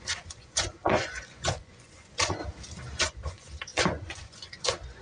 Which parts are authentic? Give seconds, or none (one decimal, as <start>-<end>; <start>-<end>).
2.4-3.0